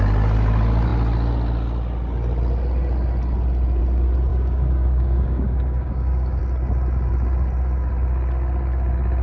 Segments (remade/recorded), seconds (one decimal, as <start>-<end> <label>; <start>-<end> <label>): 0.0-4.3 recorded; 4.3-6.4 remade; 6.4-9.2 recorded